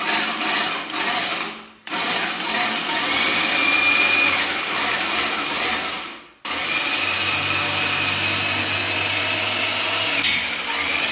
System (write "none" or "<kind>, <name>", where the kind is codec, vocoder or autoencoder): none